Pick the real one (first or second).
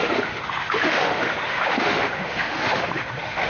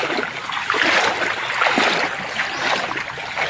second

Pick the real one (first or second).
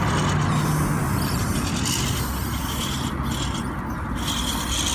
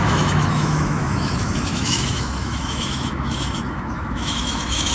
first